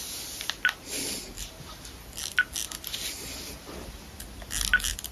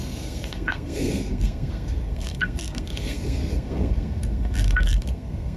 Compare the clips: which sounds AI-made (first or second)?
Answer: second